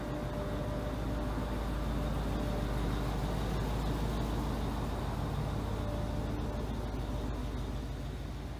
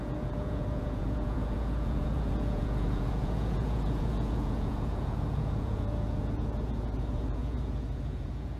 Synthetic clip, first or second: second